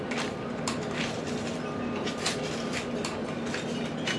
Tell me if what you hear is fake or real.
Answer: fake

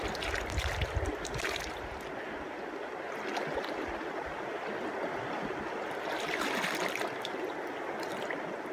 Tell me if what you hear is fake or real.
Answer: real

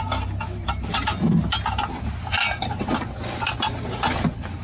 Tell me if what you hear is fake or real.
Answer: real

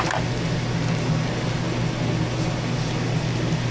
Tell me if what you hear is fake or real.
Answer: real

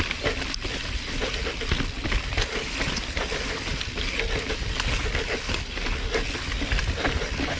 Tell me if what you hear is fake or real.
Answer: real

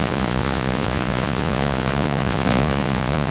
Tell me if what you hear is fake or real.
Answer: fake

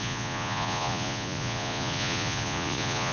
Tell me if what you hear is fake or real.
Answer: fake